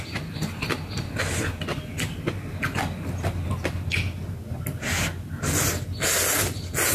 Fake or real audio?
real